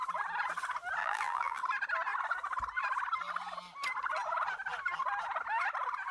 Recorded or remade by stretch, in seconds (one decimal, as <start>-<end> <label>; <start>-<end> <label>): 0.0-1.0 recorded; 1.0-1.6 remade; 1.6-6.1 recorded